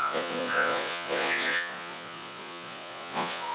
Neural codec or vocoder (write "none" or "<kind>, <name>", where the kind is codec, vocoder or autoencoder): vocoder, Vocos